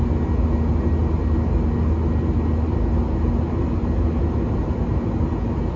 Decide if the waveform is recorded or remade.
recorded